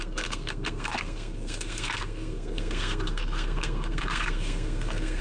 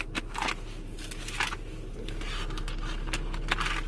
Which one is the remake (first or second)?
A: first